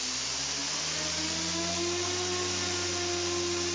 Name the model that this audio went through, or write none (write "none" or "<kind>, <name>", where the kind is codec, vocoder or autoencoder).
none